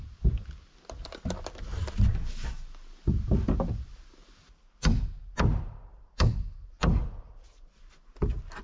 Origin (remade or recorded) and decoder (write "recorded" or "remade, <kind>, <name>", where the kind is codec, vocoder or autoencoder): recorded